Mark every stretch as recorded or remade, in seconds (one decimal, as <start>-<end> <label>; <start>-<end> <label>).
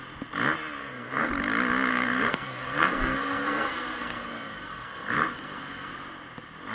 0.0-0.8 recorded; 0.8-1.3 remade; 1.3-1.9 recorded; 1.9-5.9 remade; 5.9-6.7 recorded